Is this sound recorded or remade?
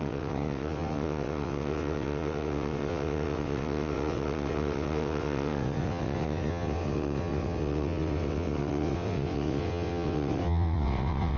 remade